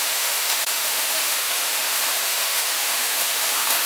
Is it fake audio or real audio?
fake